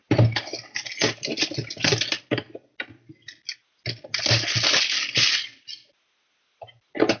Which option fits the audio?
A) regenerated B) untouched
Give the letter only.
B